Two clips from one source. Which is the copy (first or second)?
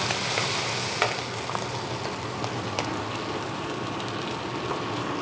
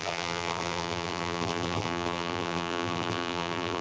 second